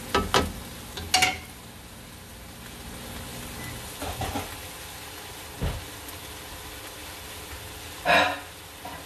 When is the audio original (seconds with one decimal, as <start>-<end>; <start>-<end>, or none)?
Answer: 0.0-9.1